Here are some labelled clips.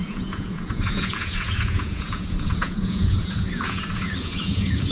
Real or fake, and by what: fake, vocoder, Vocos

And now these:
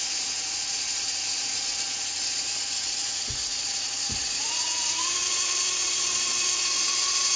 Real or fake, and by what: fake, vocoder, Vocos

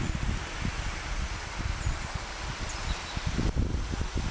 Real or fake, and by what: real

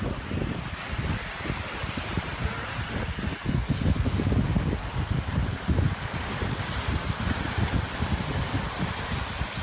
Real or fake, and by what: real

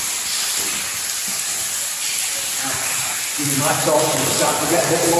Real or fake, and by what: real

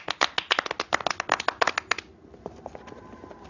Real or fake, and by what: real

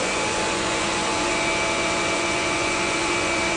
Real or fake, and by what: fake, vocoder, Vocos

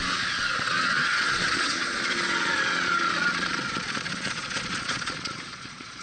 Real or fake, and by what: fake, vocoder, Vocos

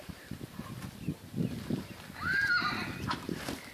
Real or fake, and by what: real